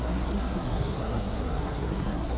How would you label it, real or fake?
fake